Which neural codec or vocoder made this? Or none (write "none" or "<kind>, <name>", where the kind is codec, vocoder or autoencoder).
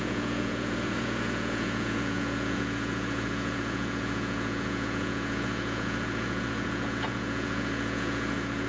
vocoder, Vocos